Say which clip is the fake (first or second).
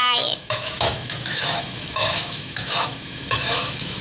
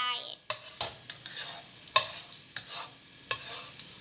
first